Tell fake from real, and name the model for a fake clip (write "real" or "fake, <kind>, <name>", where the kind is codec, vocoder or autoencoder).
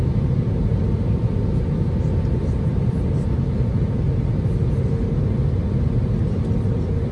real